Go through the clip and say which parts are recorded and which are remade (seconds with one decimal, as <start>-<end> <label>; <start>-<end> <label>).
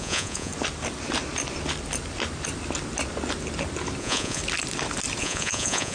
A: 0.0-0.5 remade; 0.5-4.0 recorded; 4.0-4.4 remade; 4.4-5.2 recorded; 5.2-5.9 remade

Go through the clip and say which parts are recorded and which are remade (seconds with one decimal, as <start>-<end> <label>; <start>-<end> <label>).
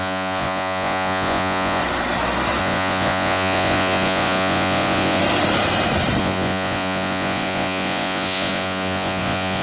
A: 0.0-1.8 remade; 1.8-2.6 recorded; 2.6-5.2 remade; 5.2-6.2 recorded; 6.2-9.6 remade